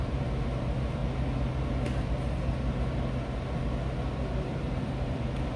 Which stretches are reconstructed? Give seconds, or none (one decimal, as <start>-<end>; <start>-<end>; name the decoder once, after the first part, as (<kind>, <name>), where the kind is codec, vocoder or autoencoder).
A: 0.0-1.0 (vocoder, BigVGAN v2); 4.4-5.6